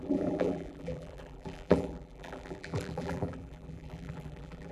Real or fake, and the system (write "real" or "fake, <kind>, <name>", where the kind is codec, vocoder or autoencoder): fake, vocoder, BigVGAN v2